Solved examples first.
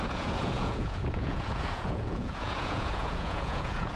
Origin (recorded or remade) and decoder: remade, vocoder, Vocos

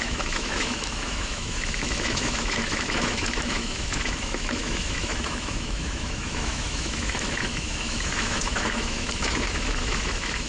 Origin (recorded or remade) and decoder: remade, autoencoder, DAC-VAE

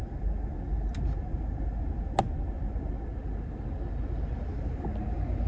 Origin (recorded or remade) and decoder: recorded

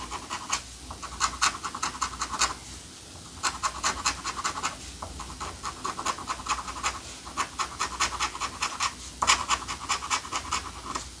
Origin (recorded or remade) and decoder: recorded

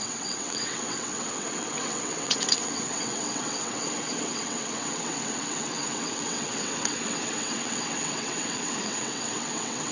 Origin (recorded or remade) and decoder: remade, vocoder, WaveNeXt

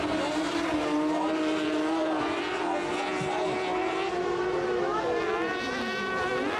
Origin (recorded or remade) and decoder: recorded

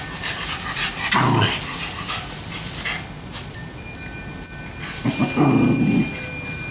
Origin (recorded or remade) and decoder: recorded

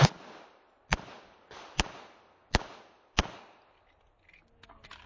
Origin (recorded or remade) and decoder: recorded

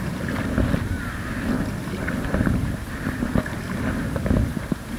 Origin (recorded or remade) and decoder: recorded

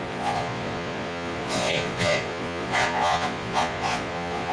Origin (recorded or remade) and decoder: remade, vocoder, Vocos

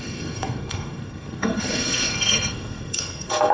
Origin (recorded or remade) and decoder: remade, codec, SNAC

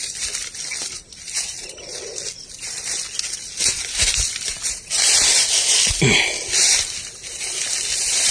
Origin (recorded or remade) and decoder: recorded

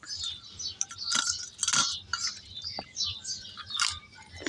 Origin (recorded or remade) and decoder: recorded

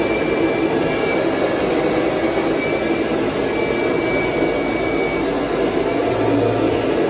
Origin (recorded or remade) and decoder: recorded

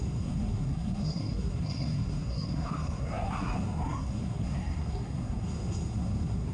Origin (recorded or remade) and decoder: remade, codec, SNAC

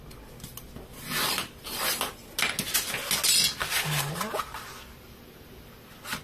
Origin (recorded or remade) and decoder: recorded